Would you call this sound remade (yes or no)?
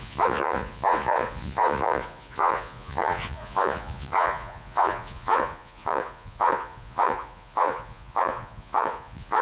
yes